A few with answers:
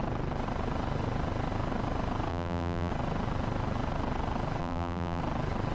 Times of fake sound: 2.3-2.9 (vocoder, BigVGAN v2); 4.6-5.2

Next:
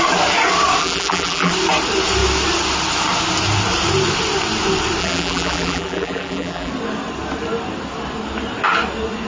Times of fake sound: 0.8-1.5 (vocoder, BigVGAN v2); 5.0-6.7

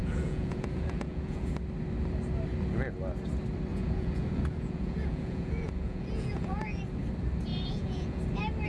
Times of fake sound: 0.0-1.5 (vocoder, Vocos); 3.7-6.8; 7.5-8.2

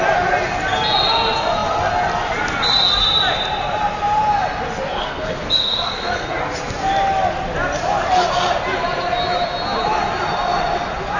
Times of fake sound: 4.9-6.4 (codec, SNAC)

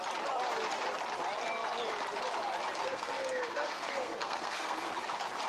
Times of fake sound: 2.8-4.9 (codec, SNAC)